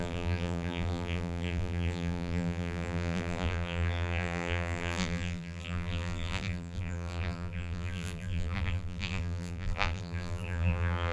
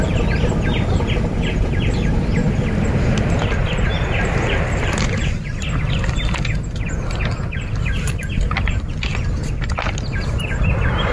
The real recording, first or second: second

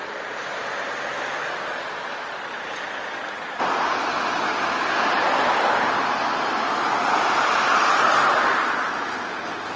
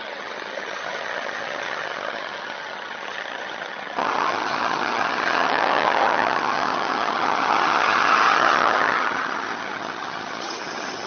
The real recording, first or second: first